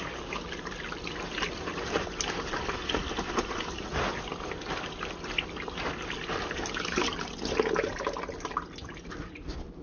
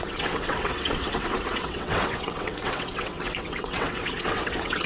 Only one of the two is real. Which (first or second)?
first